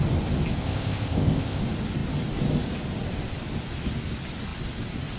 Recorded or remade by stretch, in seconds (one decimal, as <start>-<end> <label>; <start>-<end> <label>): 0.0-0.6 recorded; 0.6-1.6 remade; 1.6-5.2 recorded